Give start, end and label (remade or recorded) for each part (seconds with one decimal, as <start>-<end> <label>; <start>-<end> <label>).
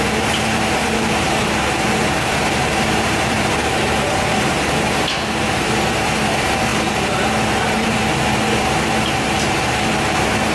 0.0-6.7 remade; 6.7-8.8 recorded; 8.8-10.5 remade